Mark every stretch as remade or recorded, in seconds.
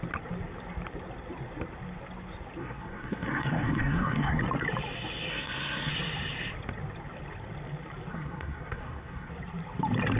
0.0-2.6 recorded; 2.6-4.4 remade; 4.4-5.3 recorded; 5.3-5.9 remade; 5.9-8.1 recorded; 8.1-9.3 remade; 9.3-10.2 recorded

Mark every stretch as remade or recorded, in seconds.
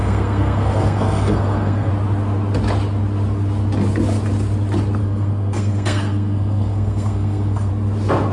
0.0-1.9 remade; 1.9-5.0 recorded; 5.0-7.7 remade; 7.7-8.3 recorded